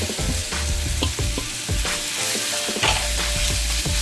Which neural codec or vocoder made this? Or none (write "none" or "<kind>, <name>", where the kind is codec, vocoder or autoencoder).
none